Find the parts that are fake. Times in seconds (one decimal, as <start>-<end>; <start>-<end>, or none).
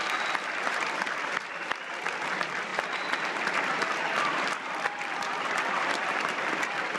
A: none